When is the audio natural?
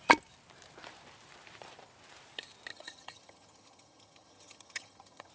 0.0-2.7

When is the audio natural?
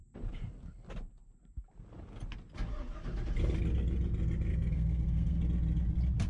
0.0-4.5; 5.4-6.3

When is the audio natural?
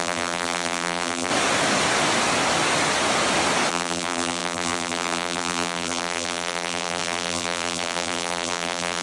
1.3-3.7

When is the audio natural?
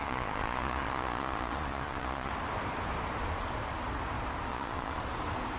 2.3-4.5; 5.0-5.6